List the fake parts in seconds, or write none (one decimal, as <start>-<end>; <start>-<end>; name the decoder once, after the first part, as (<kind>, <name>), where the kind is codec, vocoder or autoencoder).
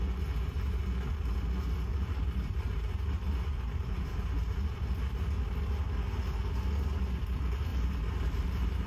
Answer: 1.9-5.0 (vocoder, BigVGAN v2); 7.7-8.9